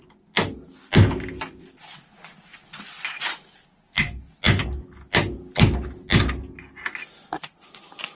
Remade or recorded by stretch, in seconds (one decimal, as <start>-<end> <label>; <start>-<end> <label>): 0.0-8.1 recorded